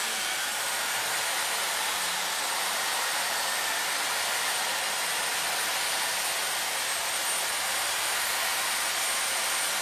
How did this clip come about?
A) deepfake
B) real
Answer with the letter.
B